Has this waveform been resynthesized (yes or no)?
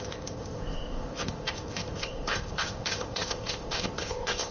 yes